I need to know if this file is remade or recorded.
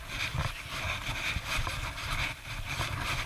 remade